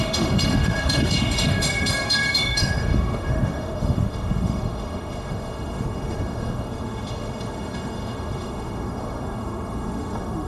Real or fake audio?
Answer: fake